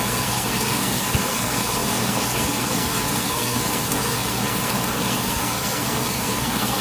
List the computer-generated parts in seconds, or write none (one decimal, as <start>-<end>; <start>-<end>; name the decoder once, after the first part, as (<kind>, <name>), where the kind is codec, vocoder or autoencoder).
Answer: 0.0-6.8 (codec, SNAC)